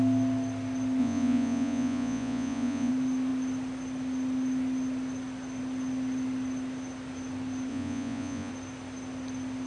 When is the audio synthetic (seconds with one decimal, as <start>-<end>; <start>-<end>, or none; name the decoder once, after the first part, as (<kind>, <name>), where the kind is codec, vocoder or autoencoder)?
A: 1.0-2.9 (vocoder, Vocos); 7.7-8.5